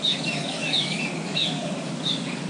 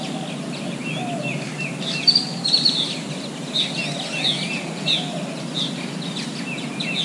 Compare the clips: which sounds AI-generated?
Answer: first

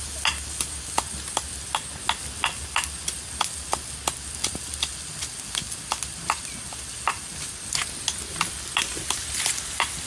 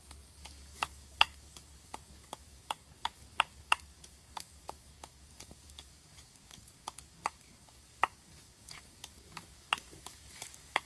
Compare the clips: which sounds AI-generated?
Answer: second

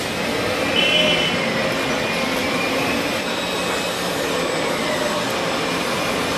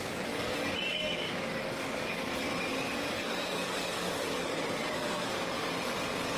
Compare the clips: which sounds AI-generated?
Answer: second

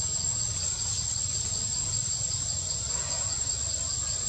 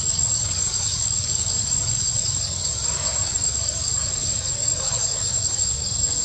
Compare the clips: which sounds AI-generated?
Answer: second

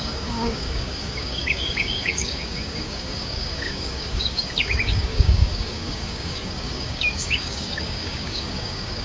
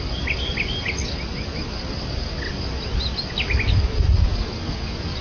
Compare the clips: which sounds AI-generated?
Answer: first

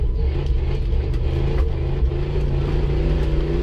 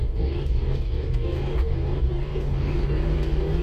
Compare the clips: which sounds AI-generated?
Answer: second